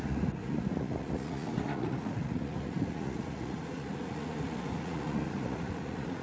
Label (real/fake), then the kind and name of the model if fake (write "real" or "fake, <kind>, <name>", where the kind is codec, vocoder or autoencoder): fake, vocoder, Vocos